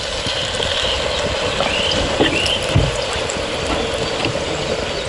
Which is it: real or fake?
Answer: real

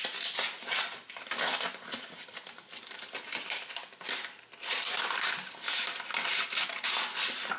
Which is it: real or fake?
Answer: real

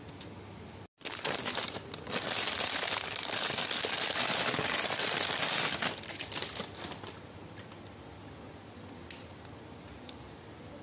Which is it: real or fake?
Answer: real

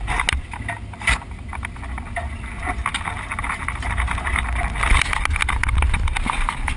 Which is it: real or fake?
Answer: real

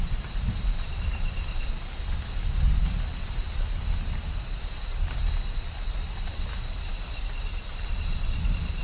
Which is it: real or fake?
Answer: real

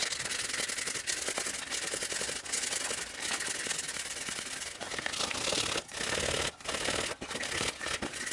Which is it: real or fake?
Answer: real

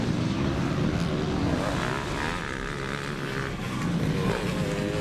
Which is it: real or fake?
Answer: real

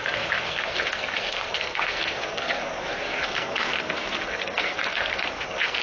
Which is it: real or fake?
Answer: fake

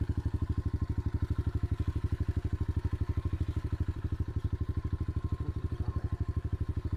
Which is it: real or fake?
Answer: real